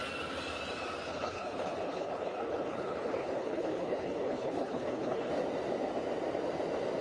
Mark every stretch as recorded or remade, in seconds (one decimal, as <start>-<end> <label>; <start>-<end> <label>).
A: 0.0-1.1 recorded; 1.1-5.3 remade; 5.3-7.0 recorded